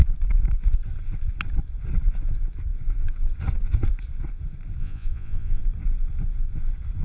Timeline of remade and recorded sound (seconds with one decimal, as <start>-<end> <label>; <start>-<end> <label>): 0.0-4.8 recorded; 4.8-5.6 remade; 5.6-7.0 recorded